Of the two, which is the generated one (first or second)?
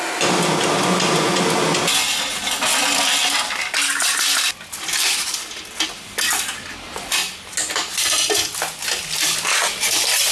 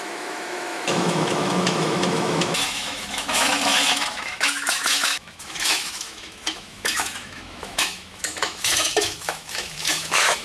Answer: second